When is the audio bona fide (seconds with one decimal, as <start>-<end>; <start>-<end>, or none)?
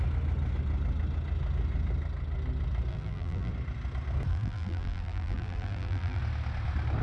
0.0-2.9; 3.5-4.3; 6.2-7.0